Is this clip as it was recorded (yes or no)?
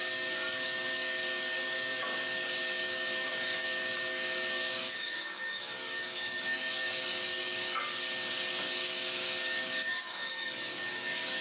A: no